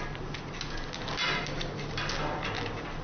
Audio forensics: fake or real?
real